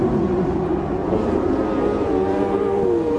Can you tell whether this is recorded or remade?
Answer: recorded